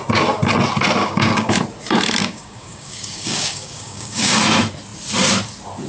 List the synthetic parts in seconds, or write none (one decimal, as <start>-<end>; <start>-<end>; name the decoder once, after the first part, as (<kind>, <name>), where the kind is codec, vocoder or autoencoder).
1.0-1.5 (codec, DAC); 2.2-4.4